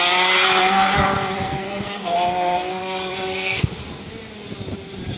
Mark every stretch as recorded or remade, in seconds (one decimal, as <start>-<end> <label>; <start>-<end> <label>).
0.0-0.6 recorded; 0.6-3.7 remade; 3.7-5.2 recorded